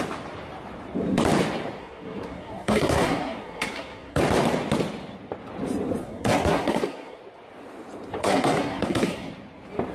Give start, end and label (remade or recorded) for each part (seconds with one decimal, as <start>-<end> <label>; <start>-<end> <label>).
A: 0.0-1.8 recorded; 1.8-4.2 remade; 4.2-6.0 recorded; 6.0-7.2 remade; 7.2-8.2 recorded; 8.2-9.3 remade; 9.3-9.9 recorded

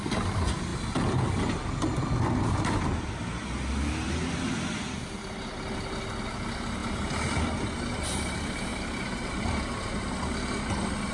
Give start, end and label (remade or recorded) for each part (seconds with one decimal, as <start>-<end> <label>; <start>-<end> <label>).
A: 0.0-11.1 recorded

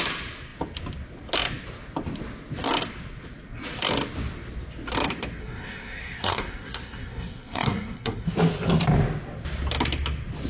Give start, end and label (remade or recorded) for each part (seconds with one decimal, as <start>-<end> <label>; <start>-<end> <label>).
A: 0.0-5.4 recorded; 5.4-8.3 remade; 8.3-10.5 recorded

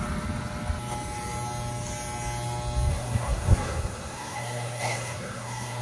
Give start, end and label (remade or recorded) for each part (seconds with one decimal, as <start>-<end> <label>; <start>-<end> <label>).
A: 0.0-2.9 recorded; 2.9-5.8 remade

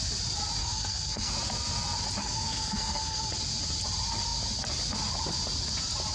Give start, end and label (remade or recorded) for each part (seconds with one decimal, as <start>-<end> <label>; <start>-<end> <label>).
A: 0.0-0.6 recorded; 0.6-1.3 remade; 1.3-2.2 recorded; 2.2-3.3 remade; 3.3-6.1 recorded

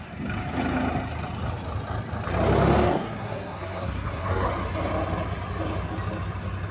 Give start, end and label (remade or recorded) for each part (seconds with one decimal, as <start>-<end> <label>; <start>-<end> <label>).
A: 0.0-2.9 recorded; 2.9-4.5 remade; 4.5-6.7 recorded

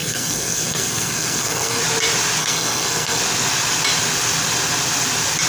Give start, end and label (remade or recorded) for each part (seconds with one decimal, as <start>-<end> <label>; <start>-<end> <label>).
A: 0.0-1.8 remade; 1.8-2.4 recorded; 2.4-3.2 remade; 3.2-5.5 recorded

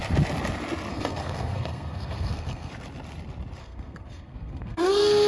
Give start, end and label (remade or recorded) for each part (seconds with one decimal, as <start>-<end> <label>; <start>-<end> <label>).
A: 0.0-0.9 recorded; 0.9-2.7 remade; 2.7-3.6 recorded; 3.6-5.3 remade